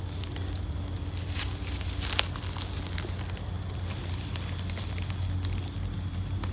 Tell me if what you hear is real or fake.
real